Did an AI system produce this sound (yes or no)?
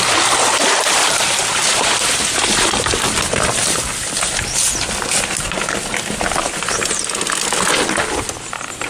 yes